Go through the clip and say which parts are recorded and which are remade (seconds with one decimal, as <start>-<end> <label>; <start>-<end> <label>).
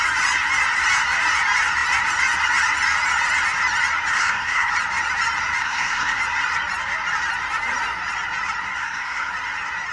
0.0-4.1 recorded; 4.1-4.7 remade; 4.7-5.6 recorded; 5.6-6.2 remade; 6.2-8.8 recorded; 8.8-9.3 remade; 9.3-9.9 recorded